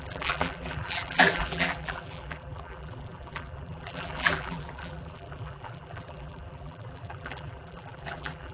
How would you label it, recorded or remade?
remade